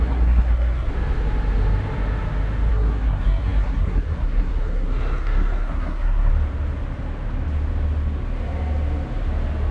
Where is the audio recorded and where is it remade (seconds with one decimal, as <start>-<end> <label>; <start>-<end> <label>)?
0.0-0.9 remade; 0.9-2.7 recorded; 2.7-6.3 remade; 6.3-9.7 recorded